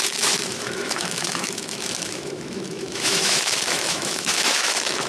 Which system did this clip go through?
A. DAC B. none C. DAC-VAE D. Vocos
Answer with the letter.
C